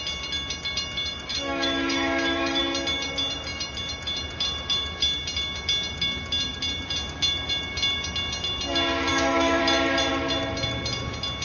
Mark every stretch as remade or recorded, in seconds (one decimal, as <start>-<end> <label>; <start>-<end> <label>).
0.0-1.3 recorded; 1.3-2.6 remade; 2.6-9.1 recorded; 9.1-9.6 remade; 9.6-11.4 recorded